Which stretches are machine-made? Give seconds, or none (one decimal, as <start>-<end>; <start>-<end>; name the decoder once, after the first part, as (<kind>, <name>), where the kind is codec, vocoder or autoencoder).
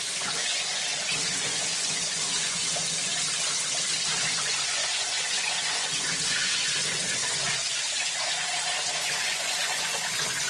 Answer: 0.0-3.1 (vocoder, Vocos); 4.1-10.5